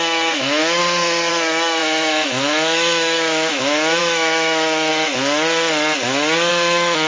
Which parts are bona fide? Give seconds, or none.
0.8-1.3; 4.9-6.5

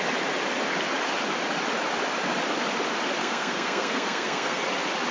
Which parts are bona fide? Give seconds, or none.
0.0-3.2; 4.6-5.1

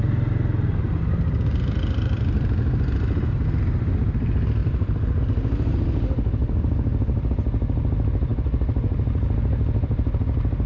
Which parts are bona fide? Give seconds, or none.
0.0-4.6; 5.2-6.4; 7.3-8.3; 10.2-10.7

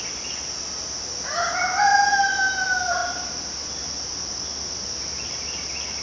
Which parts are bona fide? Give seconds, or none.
0.0-1.9; 2.6-6.0

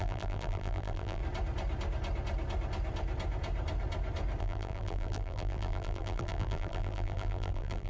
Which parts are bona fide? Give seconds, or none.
1.2-4.4

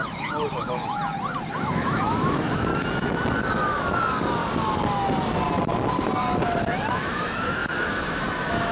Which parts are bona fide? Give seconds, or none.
1.0-1.6; 2.7-3.5; 4.4-6.9